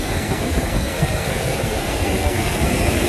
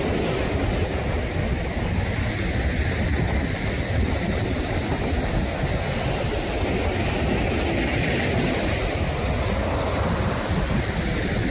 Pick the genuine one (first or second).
second